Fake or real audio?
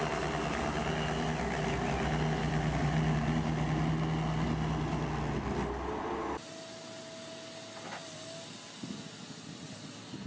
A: real